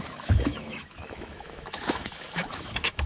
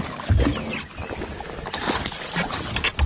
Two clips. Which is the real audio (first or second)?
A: second